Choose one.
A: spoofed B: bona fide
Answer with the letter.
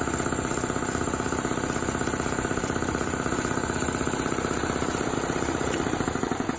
A